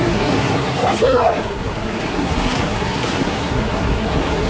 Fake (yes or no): yes